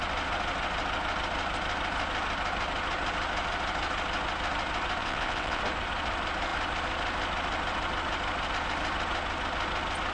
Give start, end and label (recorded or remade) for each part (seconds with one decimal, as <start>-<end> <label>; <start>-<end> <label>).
0.0-5.0 recorded; 5.0-5.6 remade; 5.6-10.1 recorded